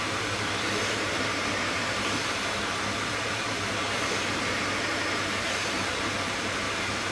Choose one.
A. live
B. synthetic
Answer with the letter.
B